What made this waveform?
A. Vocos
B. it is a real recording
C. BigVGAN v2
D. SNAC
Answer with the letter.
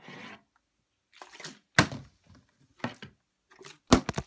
B